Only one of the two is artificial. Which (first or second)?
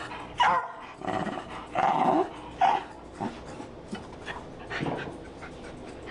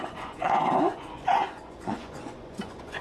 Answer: second